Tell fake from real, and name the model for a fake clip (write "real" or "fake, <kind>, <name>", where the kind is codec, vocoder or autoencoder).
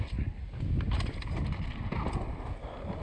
real